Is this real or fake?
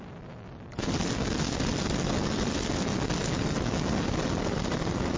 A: real